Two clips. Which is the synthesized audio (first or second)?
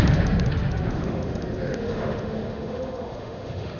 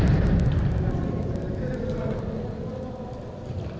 first